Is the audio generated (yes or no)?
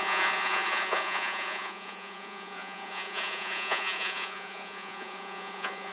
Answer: yes